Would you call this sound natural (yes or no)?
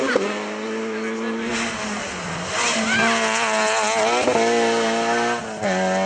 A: yes